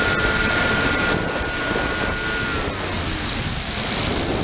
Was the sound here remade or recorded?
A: recorded